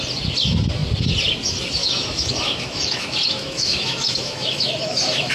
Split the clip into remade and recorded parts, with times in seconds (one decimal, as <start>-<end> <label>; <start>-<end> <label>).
0.0-1.8 recorded; 1.8-5.3 remade